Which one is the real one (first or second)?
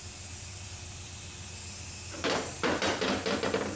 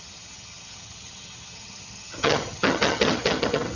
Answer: first